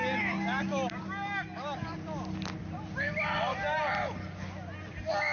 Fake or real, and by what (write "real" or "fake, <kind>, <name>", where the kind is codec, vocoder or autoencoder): real